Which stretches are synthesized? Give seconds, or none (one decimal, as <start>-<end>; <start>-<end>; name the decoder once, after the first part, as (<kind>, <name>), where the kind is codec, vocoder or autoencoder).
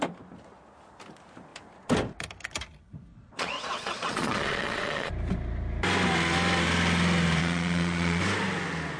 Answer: 3.1-5.1 (vocoder, Vocos); 7.4-8.2